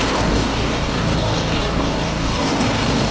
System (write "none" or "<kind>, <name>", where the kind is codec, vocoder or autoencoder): codec, DAC